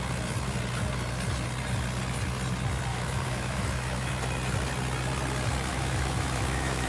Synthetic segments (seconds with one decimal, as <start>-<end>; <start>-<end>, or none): 2.9-4.1; 5.7-6.9